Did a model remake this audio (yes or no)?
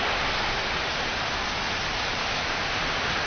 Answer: no